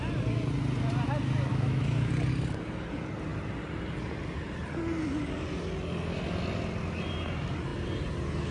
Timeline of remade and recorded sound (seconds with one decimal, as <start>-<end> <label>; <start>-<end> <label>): 0.0-1.5 recorded; 1.5-2.1 remade; 2.1-8.5 recorded